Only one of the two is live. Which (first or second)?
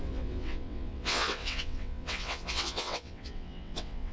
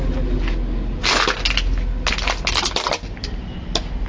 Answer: second